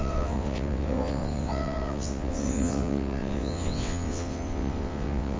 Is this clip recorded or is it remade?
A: remade